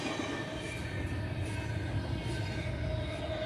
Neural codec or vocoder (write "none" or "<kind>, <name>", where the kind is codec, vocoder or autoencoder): none